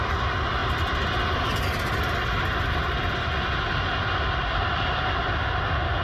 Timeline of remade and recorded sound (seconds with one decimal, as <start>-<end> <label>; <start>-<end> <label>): 0.0-6.0 recorded